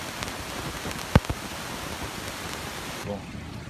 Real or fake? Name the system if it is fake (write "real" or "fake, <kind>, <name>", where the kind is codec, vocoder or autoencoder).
fake, vocoder, BigVGAN v2